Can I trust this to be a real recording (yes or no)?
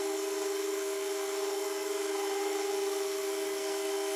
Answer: no